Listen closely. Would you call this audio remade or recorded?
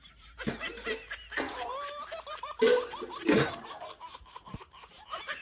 remade